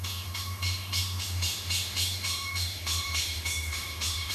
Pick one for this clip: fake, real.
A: fake